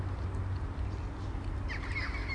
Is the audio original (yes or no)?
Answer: yes